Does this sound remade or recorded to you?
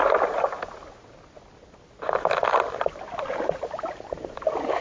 recorded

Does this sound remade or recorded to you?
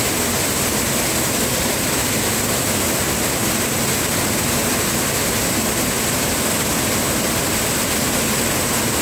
recorded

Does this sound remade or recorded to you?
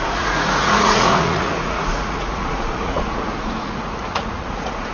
remade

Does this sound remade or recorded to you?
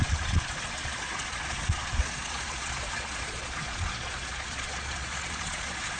remade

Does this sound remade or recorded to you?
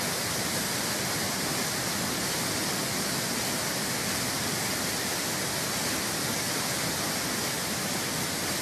recorded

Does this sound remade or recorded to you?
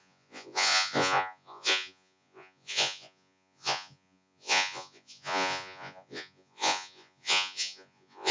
remade